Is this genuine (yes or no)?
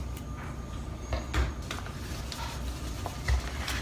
yes